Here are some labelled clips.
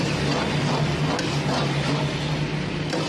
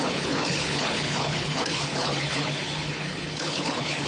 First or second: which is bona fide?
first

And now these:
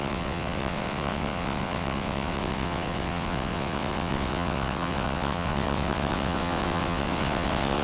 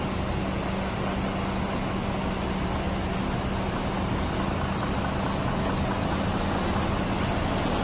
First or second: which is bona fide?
second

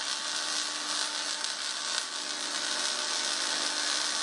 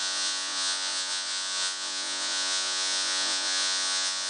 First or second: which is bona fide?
first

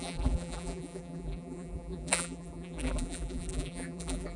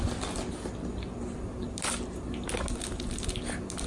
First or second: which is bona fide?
second